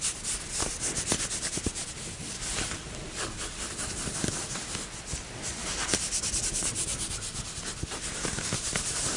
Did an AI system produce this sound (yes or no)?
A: no